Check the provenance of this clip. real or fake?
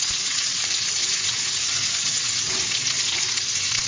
fake